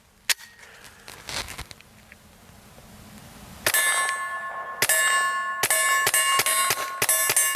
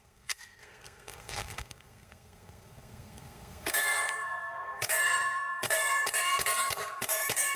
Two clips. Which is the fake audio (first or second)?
second